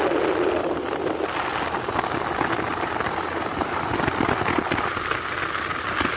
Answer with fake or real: real